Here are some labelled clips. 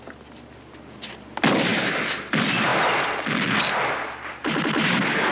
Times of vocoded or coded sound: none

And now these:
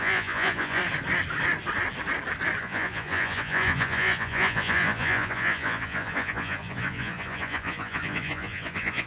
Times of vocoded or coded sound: 0.0-0.8 (vocoder, Vocos); 2.6-9.1

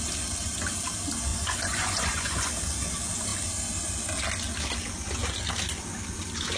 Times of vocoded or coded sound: 1.3-2.5 (vocoder, Vocos)

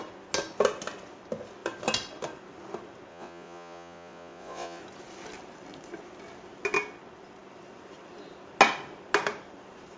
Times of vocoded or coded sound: 3.1-4.8 (vocoder, Vocos)

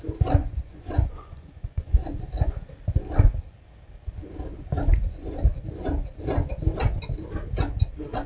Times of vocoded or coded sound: 0.4-2.0 (vocoder, Vocos)

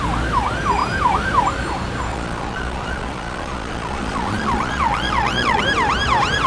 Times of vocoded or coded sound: 2.1-5.6 (vocoder, Vocos)

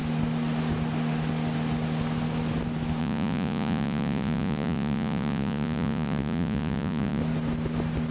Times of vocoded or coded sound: 3.0-7.2 (vocoder, Vocos)

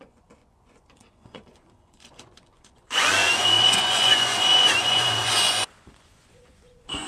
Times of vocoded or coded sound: 0.0-7.1 (vocoder, Vocos)